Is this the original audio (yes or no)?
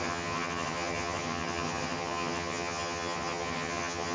no